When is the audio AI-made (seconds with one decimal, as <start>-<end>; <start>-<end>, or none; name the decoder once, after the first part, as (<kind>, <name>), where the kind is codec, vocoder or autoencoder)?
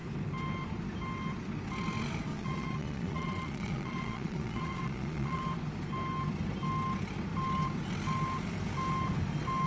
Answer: 2.3-5.4 (vocoder, Vocos)